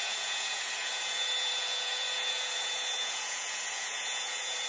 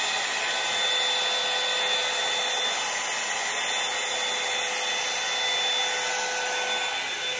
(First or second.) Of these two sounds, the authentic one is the second